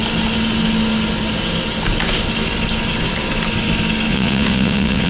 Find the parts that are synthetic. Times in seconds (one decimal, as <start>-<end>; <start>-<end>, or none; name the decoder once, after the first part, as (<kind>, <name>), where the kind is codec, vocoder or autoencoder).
4.1-5.1 (vocoder, Vocos)